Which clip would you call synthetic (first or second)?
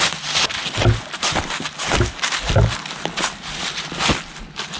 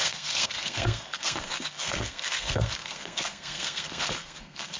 second